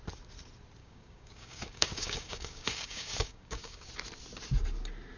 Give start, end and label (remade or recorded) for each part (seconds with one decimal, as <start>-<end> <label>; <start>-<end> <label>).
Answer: 0.0-0.8 recorded; 0.8-3.9 remade; 3.9-5.2 recorded